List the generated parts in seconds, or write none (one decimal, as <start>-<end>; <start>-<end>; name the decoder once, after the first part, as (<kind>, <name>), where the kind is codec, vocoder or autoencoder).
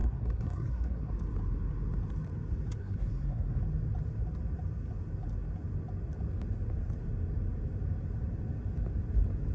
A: 0.0-1.1 (codec, SNAC); 2.8-3.6